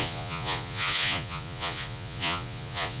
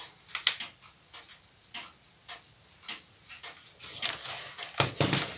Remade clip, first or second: first